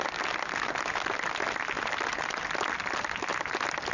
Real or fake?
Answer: real